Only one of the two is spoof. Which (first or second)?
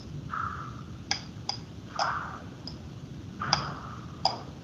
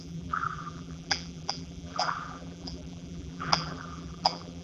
second